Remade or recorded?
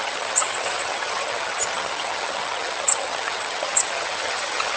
remade